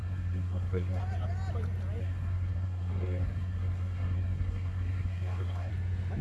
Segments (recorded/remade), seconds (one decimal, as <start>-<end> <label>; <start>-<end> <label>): 0.0-1.0 remade; 1.0-2.0 recorded; 2.0-5.7 remade; 5.7-6.2 recorded